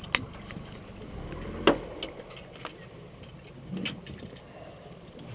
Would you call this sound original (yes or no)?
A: yes